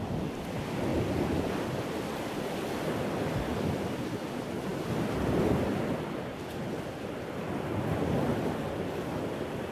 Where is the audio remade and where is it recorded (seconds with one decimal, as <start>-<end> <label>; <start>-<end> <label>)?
0.0-0.9 recorded; 0.9-1.9 remade; 1.9-9.7 recorded